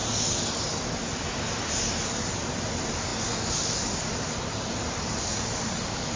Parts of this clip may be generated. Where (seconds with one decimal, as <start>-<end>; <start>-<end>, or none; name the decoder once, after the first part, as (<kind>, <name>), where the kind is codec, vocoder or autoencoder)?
1.9-3.1 (vocoder, BigVGAN v2); 4.0-6.2